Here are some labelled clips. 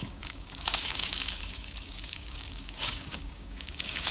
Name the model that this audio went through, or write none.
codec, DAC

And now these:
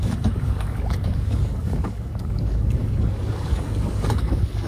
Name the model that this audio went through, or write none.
codec, DAC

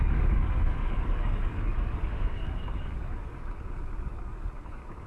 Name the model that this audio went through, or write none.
codec, DAC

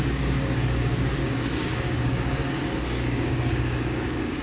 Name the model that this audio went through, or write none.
codec, DAC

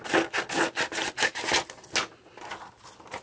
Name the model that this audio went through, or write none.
none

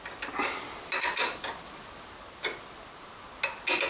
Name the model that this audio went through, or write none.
none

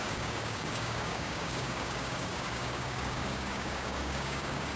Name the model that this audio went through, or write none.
codec, DAC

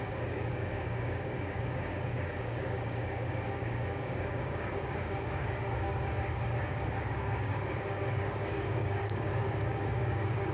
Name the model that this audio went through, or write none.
codec, DAC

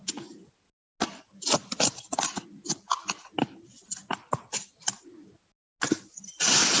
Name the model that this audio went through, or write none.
none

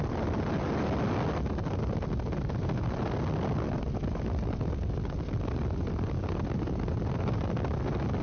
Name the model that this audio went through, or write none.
none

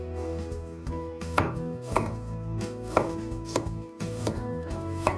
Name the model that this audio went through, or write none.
codec, DAC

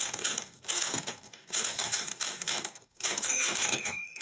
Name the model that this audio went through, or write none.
codec, DAC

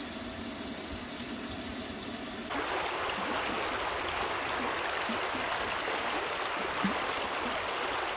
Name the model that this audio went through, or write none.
none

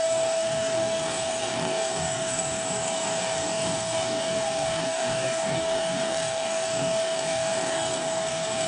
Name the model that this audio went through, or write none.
codec, DAC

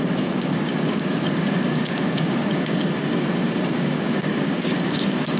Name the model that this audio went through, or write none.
codec, DAC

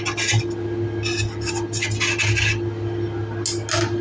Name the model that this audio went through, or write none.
none